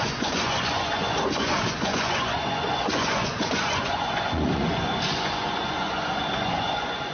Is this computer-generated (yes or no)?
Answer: yes